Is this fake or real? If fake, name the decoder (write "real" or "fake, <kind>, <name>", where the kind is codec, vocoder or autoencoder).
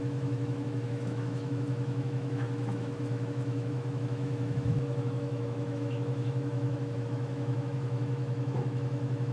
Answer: fake, autoencoder, DAC-VAE